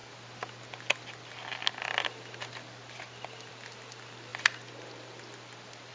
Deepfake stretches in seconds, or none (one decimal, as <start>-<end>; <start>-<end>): none